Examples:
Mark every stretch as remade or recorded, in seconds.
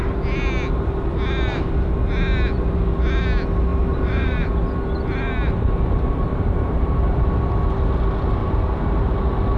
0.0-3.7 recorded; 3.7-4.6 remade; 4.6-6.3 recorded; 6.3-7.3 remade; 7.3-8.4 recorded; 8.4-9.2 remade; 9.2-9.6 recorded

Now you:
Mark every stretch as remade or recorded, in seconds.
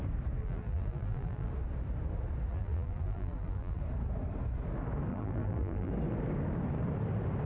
0.0-0.4 recorded; 0.4-1.5 remade; 1.5-2.5 recorded; 2.5-3.8 remade; 3.8-5.1 recorded; 5.1-5.9 remade; 5.9-7.5 recorded